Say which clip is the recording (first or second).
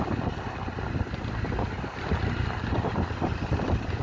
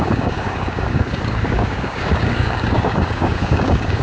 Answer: first